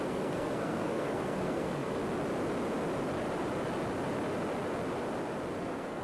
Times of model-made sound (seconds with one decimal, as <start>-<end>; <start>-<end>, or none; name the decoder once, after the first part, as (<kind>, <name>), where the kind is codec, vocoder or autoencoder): 0.0-2.0 (codec, SNAC); 5.6-6.0